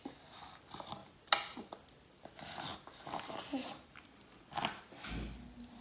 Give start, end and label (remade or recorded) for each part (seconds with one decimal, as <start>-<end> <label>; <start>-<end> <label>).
0.0-5.8 recorded